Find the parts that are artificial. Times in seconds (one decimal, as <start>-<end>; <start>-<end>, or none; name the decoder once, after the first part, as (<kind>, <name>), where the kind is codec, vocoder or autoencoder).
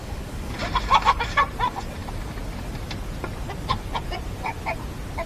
0.0-0.6 (codec, DAC)